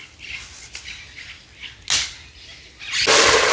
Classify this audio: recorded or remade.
recorded